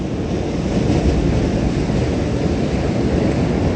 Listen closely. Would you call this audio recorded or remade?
recorded